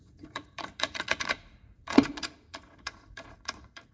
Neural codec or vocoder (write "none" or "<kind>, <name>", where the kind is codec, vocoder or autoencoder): vocoder, Vocos